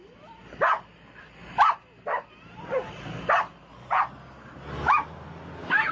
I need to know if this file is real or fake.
real